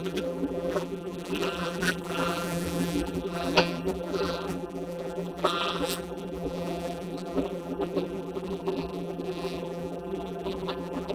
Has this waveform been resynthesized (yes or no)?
yes